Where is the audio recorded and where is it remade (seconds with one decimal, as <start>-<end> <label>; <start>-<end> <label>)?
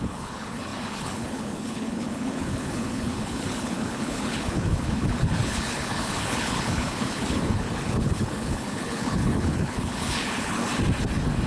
0.0-10.6 remade; 10.6-11.5 recorded